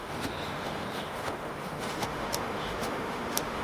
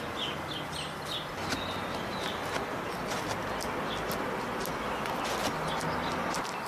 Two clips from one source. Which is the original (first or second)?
second